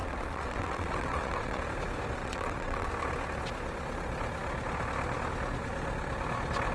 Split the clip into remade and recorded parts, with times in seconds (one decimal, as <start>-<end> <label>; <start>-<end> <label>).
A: 0.0-1.6 remade; 1.6-2.2 recorded; 2.2-2.9 remade; 2.9-6.7 recorded